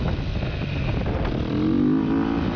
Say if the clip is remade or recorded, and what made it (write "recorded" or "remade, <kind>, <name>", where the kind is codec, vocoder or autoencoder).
recorded